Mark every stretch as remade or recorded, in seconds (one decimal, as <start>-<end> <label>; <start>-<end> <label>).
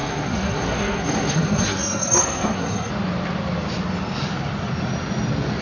0.0-2.9 remade; 2.9-5.6 recorded